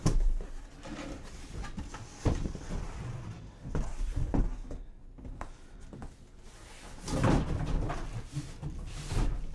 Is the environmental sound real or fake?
real